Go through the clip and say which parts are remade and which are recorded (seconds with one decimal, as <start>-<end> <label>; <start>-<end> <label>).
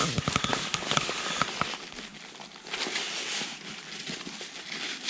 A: 0.0-0.5 recorded; 0.5-1.2 remade; 1.2-5.1 recorded